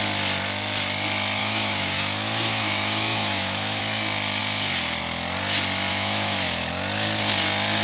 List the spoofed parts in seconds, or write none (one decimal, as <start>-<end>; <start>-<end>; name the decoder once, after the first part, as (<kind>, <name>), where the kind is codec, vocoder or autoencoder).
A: 1.4-3.8 (autoencoder, DAC-VAE); 5.9-6.7